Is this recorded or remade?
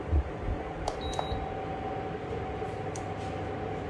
recorded